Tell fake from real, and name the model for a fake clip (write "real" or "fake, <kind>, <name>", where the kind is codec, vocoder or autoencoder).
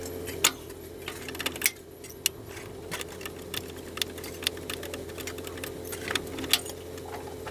real